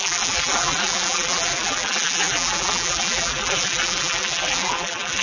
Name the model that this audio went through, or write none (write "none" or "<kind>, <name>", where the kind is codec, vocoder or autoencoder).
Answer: vocoder, BigVGAN v2